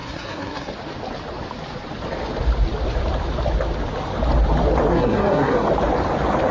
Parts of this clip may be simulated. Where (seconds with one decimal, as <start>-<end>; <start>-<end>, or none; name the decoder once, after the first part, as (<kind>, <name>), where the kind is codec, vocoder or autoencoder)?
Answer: 0.0-0.7 (codec, SNAC); 4.9-5.7